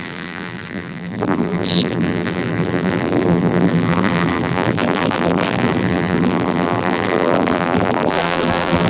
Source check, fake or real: fake